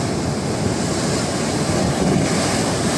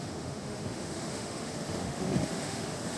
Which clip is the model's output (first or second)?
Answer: second